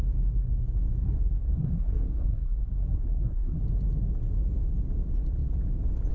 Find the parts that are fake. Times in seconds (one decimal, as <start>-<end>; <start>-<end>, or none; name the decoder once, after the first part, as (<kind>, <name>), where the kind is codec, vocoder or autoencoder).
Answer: 1.0-3.6 (codec, SNAC)